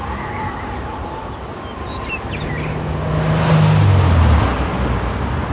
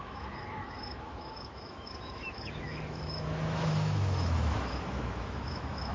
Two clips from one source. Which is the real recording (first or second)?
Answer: first